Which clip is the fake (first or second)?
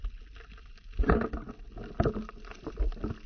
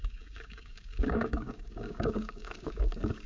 second